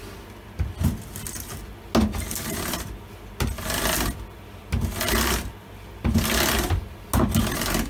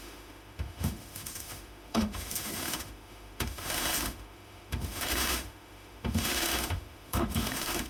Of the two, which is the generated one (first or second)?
second